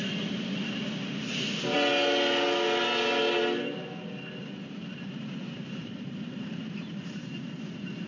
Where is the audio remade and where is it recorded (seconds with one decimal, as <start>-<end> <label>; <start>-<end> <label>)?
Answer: 0.0-4.4 recorded; 4.4-8.1 remade